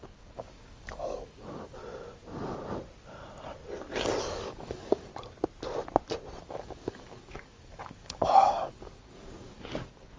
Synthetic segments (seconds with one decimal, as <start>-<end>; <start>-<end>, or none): 0.0-1.8; 4.2-5.1; 6.4-10.2

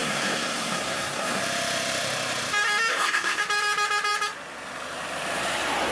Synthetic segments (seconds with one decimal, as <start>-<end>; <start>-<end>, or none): 0.0-1.4; 2.9-3.4

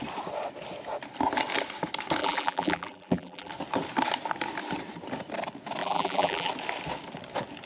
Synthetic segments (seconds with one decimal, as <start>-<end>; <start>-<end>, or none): 2.2-3.5; 5.8-6.5